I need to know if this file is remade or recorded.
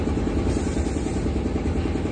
recorded